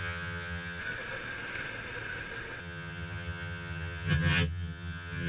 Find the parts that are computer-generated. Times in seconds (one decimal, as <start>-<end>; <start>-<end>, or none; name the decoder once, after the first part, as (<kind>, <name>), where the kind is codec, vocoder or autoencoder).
0.0-0.8 (vocoder, HiFi-GAN); 2.6-5.3